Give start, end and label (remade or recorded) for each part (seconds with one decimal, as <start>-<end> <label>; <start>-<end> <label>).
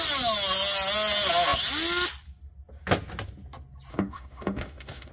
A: 0.0-3.9 recorded; 3.9-5.1 remade